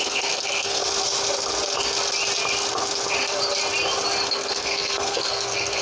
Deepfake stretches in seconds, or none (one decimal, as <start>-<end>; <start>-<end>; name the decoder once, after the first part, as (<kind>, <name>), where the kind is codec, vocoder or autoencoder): 0.0-0.8 (codec, SNAC); 4.3-5.8